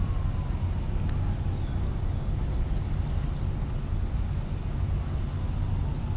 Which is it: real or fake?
real